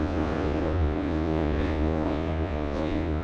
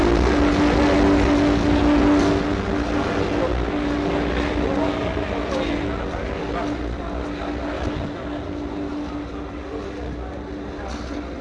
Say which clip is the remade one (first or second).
first